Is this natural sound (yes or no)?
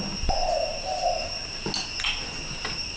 yes